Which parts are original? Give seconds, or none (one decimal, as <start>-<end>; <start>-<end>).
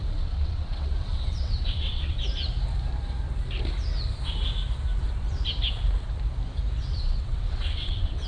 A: 2.2-6.9